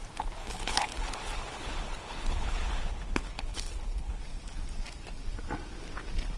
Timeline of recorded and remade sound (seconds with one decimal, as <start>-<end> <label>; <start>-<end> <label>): 0.0-0.4 recorded; 0.4-4.2 remade; 4.2-6.4 recorded